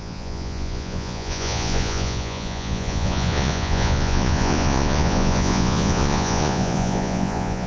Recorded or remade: remade